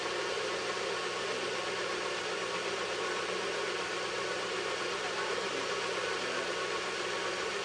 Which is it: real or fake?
real